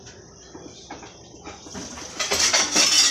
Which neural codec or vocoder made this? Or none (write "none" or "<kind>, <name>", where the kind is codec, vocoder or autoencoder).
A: none